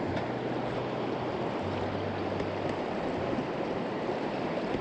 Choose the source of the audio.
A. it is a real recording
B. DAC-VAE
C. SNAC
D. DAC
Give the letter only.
A